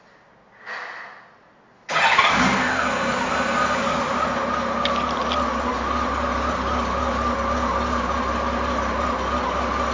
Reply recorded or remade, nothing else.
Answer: recorded